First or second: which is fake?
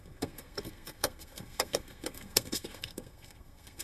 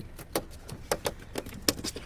first